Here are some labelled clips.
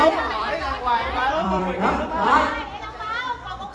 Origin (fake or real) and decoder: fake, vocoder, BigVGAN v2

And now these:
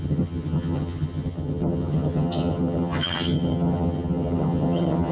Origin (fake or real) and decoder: fake, vocoder, HiFi-GAN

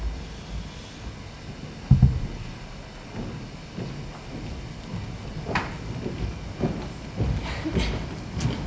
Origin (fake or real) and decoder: real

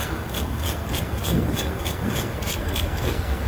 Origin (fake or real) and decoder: fake, codec, SNAC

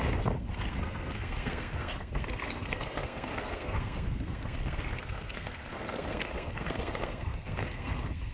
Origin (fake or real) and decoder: fake, codec, SNAC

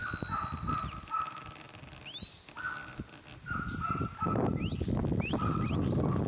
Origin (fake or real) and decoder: real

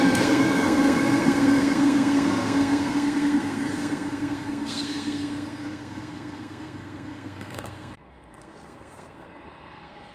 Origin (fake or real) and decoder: fake, codec, SNAC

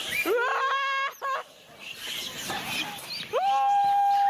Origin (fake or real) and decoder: real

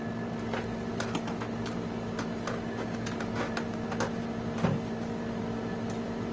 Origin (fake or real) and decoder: real